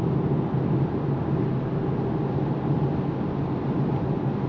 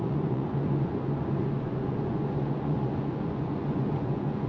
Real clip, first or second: first